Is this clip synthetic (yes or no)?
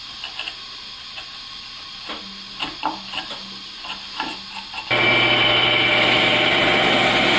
no